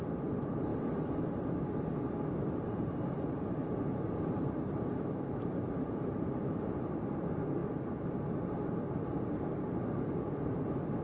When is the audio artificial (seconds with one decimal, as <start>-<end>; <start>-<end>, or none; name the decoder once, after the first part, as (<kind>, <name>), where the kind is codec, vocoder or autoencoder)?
0.0-0.7 (vocoder, BigVGAN v2); 2.4-7.6